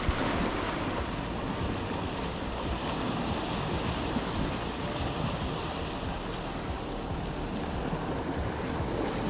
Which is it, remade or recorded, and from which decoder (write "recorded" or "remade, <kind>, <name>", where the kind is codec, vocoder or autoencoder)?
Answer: recorded